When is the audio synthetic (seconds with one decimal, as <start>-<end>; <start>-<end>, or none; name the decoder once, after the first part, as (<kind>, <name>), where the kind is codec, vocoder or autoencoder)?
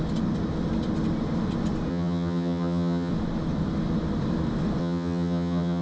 1.9-3.1 (vocoder, HiFi-GAN); 4.8-5.8